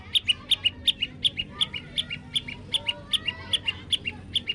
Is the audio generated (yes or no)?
no